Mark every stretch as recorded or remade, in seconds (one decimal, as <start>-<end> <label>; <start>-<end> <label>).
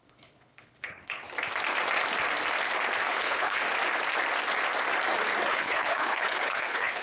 0.0-1.2 remade; 1.2-3.1 recorded; 3.1-3.6 remade; 3.6-5.5 recorded; 5.5-7.0 remade